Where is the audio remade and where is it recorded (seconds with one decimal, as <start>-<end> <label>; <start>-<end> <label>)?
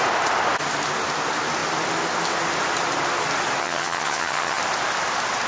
0.0-3.6 recorded; 3.6-4.6 remade; 4.6-5.5 recorded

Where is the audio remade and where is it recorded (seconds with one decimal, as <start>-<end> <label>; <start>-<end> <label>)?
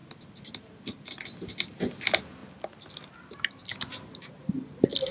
0.0-5.1 recorded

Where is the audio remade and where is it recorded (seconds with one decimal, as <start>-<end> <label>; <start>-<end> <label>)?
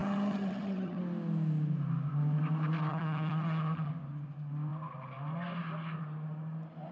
0.0-1.0 remade; 1.0-2.9 recorded; 2.9-3.9 remade; 3.9-6.9 recorded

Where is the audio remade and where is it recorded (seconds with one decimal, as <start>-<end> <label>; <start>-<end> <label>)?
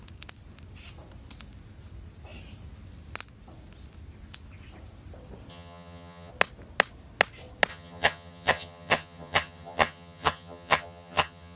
0.0-5.5 recorded; 5.5-6.3 remade; 6.3-7.7 recorded; 7.7-11.6 remade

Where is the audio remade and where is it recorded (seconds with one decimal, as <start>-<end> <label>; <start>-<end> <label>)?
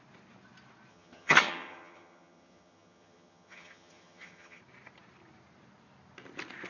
0.0-0.9 recorded; 0.9-4.6 remade; 4.6-6.7 recorded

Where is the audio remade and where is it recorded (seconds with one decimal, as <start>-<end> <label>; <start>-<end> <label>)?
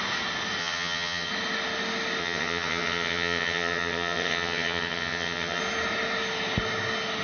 0.0-0.6 recorded; 0.6-1.3 remade; 1.3-2.2 recorded; 2.2-5.6 remade; 5.6-7.2 recorded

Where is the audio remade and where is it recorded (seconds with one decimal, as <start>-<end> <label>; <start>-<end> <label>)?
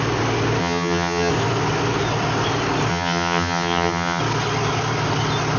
0.0-0.6 recorded; 0.6-1.3 remade; 1.3-2.9 recorded; 2.9-4.2 remade; 4.2-5.6 recorded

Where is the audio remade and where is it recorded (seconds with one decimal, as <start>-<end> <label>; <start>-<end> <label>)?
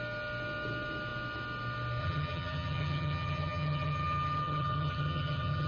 0.0-2.0 recorded; 2.0-5.7 remade